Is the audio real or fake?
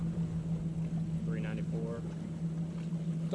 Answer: real